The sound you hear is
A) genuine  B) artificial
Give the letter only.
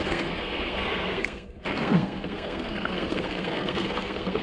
B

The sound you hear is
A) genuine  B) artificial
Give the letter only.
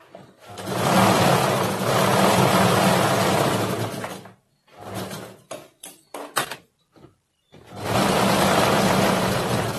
A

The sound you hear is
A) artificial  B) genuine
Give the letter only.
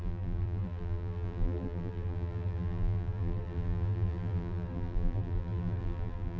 A